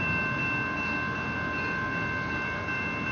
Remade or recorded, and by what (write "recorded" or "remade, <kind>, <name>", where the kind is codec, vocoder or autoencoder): recorded